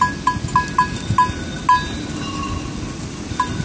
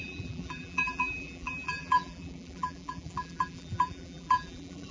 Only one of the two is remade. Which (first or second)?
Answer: second